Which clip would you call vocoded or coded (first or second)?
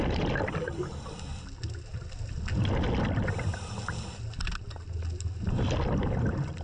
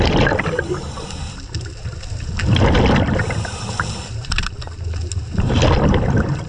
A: second